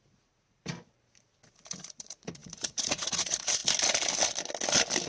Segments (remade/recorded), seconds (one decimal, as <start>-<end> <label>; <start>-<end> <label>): 0.0-0.6 remade; 0.6-1.5 recorded; 1.5-3.6 remade; 3.6-5.1 recorded